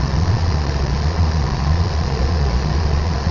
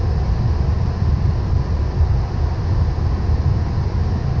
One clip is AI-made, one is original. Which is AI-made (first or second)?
first